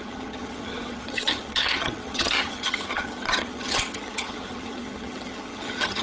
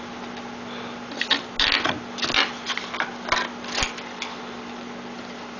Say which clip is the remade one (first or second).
first